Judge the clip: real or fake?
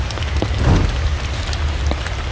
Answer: real